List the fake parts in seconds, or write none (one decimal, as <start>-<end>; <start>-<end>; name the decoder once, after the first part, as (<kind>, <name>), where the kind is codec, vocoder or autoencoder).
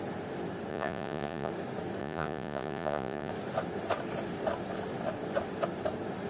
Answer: 0.7-1.5 (vocoder, Vocos); 2.0-3.3